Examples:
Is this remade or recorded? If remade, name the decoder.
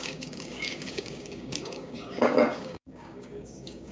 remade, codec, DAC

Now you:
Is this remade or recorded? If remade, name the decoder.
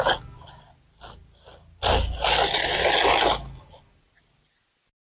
recorded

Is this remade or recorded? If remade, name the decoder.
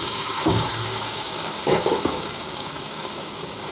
remade, codec, DAC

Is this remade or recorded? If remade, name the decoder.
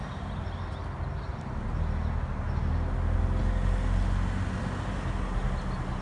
recorded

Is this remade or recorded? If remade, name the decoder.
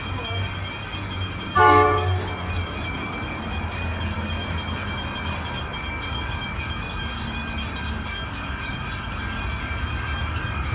remade, codec, DAC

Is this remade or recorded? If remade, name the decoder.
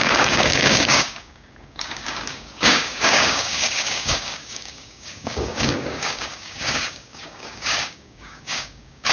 remade, codec, DAC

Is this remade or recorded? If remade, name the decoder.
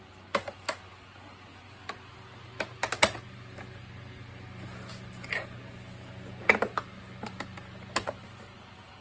recorded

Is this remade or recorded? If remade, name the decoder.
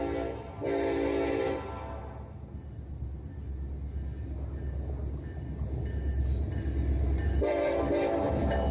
recorded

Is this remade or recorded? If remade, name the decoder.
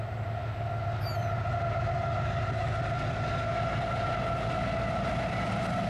recorded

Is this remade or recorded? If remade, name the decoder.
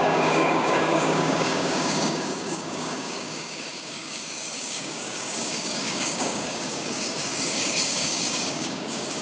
remade, codec, DAC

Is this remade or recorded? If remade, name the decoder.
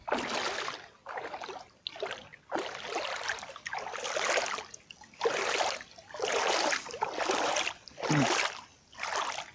recorded